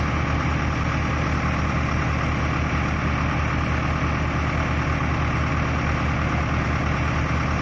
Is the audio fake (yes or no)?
no